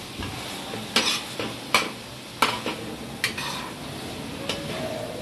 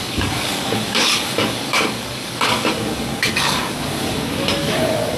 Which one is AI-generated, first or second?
second